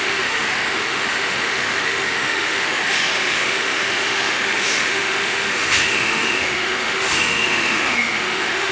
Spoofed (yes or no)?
yes